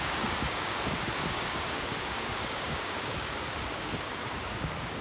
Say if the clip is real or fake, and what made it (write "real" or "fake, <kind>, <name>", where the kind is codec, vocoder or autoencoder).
fake, codec, DAC